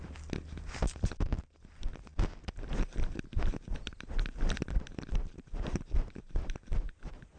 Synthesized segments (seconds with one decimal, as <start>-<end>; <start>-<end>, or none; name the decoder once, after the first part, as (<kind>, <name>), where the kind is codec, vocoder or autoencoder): 1.3-2.8 (vocoder, BigVGAN v2); 3.7-7.0